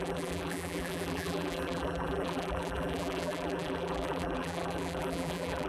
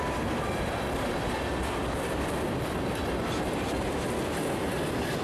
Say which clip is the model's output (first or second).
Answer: first